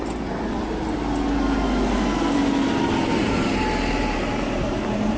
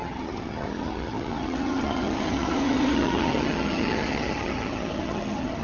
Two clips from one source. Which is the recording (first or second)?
first